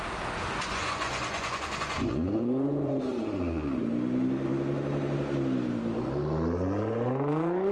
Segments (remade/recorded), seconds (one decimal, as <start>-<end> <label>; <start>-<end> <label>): 0.0-0.6 recorded; 0.6-3.8 remade; 3.8-7.7 recorded